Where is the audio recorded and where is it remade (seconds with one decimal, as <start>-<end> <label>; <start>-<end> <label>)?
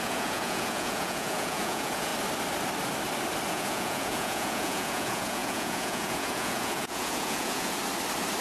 0.0-2.1 remade; 2.1-3.5 recorded; 3.5-7.8 remade; 7.8-8.4 recorded